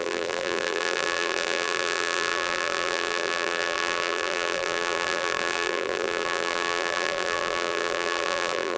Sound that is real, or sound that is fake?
fake